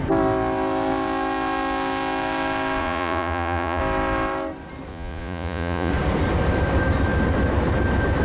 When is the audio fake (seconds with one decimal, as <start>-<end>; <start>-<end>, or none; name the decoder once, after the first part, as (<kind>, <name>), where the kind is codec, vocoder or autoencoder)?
2.8-3.8 (vocoder, Vocos); 4.9-5.9